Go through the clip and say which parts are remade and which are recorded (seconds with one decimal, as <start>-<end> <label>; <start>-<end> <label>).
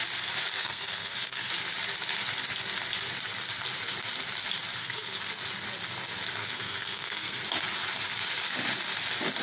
0.0-0.6 recorded; 0.6-1.5 remade; 1.5-4.8 recorded; 4.8-5.3 remade; 5.3-6.4 recorded; 6.4-7.4 remade; 7.4-9.4 recorded